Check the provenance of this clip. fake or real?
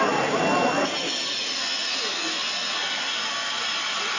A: real